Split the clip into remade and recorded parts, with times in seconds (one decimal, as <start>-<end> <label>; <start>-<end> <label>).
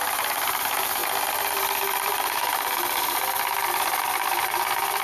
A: 0.0-1.0 remade; 1.0-4.0 recorded; 4.0-5.0 remade